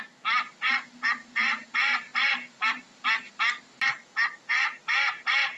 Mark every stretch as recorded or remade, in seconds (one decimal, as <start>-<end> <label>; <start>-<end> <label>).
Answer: 0.0-5.6 recorded